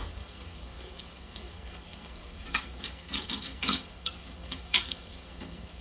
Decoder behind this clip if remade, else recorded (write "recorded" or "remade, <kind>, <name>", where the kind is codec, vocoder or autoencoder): remade, codec, SNAC